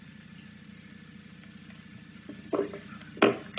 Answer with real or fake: real